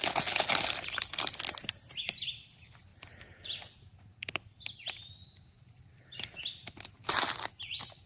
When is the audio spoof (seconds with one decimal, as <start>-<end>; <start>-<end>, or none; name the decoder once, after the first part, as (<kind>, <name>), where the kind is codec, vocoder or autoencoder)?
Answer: none